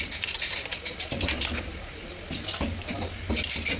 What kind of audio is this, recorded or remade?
recorded